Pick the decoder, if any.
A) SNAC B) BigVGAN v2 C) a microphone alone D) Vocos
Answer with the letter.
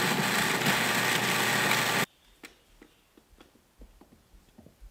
C